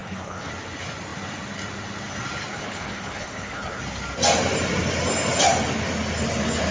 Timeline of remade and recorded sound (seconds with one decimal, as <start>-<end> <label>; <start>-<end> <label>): 0.0-0.5 remade; 0.5-2.5 recorded; 2.5-3.8 remade; 3.8-6.7 recorded